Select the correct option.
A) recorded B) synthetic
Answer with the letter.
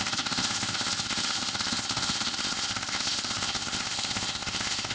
B